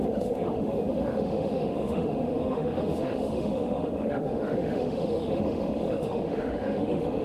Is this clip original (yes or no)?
no